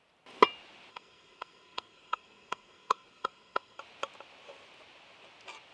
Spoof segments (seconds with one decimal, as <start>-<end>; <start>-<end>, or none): 0.9-3.8